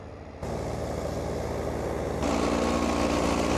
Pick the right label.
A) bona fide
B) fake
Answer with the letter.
A